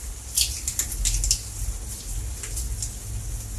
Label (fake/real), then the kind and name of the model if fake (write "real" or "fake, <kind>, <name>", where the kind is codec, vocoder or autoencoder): real